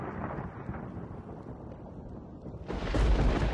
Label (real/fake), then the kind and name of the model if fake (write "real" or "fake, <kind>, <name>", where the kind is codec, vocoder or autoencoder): real